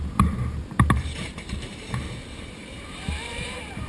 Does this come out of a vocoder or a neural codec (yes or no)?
yes